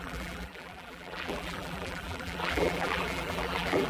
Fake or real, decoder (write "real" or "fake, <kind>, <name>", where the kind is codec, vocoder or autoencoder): fake, vocoder, BigVGAN v2